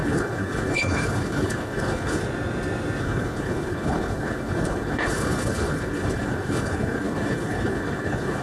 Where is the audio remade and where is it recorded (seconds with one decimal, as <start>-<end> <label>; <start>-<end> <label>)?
0.0-2.2 remade; 2.2-3.0 recorded; 3.0-8.4 remade